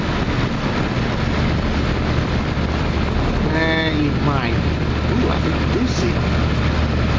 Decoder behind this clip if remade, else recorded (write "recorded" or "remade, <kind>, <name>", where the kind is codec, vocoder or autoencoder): recorded